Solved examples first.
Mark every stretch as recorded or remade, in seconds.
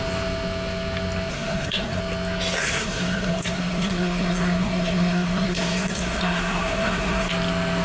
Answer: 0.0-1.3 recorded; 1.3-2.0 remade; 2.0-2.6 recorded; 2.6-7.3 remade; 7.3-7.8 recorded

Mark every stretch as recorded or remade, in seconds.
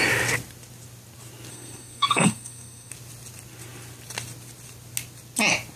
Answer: 0.0-1.5 recorded; 1.5-2.9 remade; 2.9-5.8 recorded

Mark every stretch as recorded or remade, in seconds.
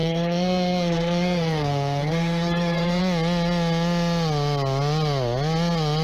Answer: 0.0-3.0 remade; 3.0-6.0 recorded